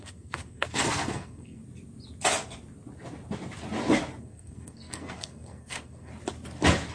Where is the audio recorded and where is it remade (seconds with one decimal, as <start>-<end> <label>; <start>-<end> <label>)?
0.0-1.6 remade; 1.6-4.2 recorded; 4.2-6.1 remade; 6.1-6.9 recorded